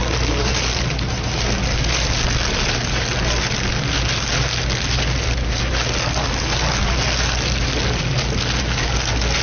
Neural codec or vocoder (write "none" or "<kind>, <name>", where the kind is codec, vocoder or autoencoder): none